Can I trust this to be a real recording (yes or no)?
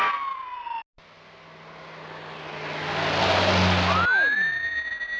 yes